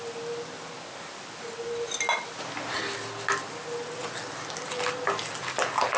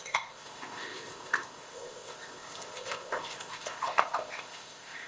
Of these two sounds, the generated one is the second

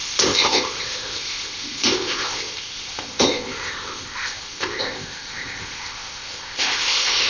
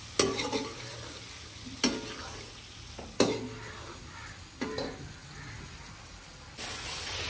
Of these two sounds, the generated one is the first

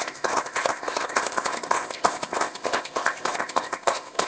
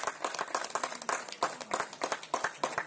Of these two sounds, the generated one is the first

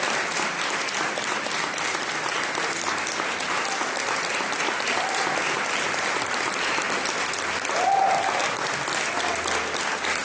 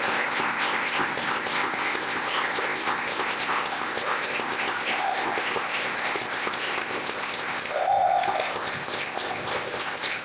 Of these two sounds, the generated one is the second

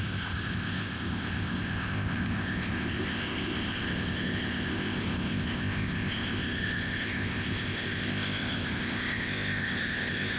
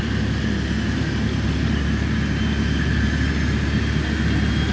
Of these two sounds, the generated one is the first